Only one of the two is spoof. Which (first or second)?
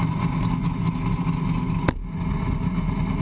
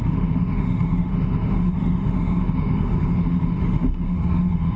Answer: second